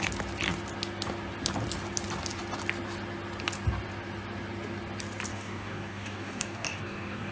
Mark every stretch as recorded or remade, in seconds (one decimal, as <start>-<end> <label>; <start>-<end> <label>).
0.0-5.3 recorded; 5.3-7.3 remade